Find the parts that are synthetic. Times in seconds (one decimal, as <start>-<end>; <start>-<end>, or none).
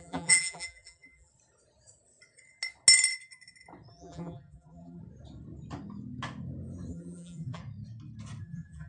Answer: 0.0-1.3; 3.9-5.0; 6.9-7.6; 8.4-8.9